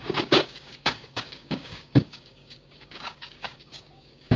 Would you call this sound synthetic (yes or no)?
yes